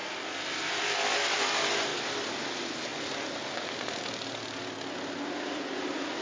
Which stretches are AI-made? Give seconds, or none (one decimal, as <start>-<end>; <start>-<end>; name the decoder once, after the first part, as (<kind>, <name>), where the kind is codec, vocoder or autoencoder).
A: none